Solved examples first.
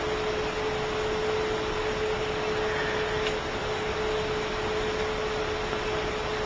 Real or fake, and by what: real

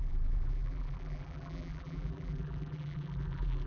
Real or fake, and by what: fake, vocoder, BigVGAN v2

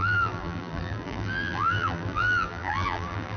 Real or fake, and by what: fake, vocoder, BigVGAN v2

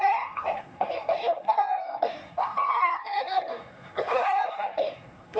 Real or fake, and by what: fake, codec, SNAC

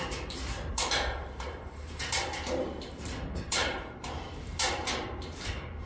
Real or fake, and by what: fake, vocoder, BigVGAN v2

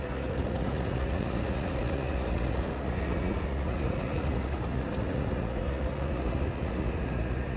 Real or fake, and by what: fake, vocoder, Vocos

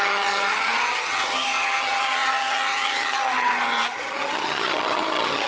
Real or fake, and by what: fake, vocoder, HiFi-GAN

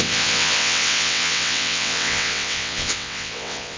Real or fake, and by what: fake, vocoder, WaveNeXt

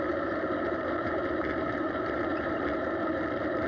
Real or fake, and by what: fake, vocoder, BigVGAN v2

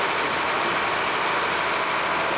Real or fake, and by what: real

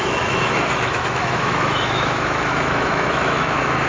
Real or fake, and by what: fake, autoencoder, DAC-VAE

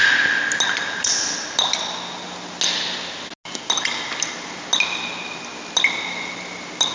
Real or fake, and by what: real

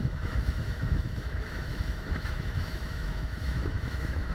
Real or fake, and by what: fake, autoencoder, DAC-VAE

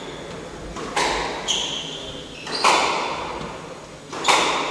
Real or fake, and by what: real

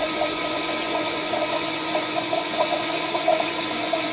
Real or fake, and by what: fake, vocoder, Vocos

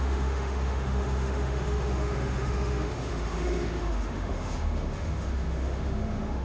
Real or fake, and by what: fake, autoencoder, DAC-VAE